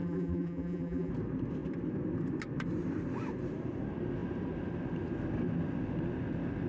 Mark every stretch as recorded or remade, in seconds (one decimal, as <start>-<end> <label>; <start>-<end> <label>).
0.0-1.1 remade; 1.1-6.7 recorded